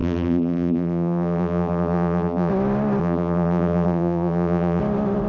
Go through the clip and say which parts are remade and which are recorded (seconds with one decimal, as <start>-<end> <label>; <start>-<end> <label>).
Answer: 0.0-2.5 remade; 2.5-3.0 recorded; 3.0-4.8 remade; 4.8-5.3 recorded